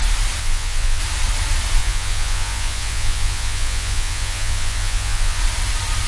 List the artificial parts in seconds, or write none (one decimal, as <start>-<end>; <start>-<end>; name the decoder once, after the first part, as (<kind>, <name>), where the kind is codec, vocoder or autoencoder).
0.4-1.0 (vocoder, Vocos); 1.8-5.4